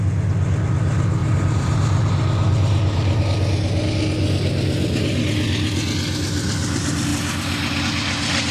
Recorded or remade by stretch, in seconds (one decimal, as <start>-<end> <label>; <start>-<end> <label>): 0.0-1.2 recorded; 1.2-3.2 remade; 3.2-8.5 recorded